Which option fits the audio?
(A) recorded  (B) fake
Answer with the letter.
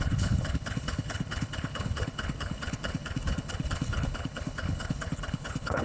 B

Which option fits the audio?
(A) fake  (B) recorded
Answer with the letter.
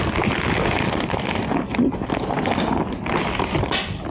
B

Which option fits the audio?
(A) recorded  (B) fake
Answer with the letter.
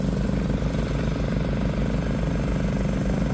A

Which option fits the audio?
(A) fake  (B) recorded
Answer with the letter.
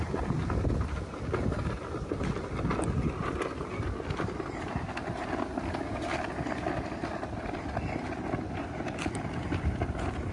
B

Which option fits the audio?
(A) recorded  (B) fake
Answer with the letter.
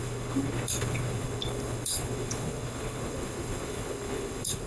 B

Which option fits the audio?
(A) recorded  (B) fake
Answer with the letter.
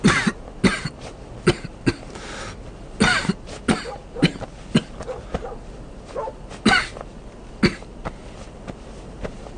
A